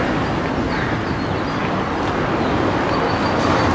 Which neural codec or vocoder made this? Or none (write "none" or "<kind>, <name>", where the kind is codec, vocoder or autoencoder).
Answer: none